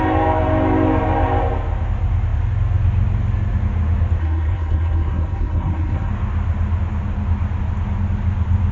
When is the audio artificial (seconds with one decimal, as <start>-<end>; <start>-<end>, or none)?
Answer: 4.2-6.1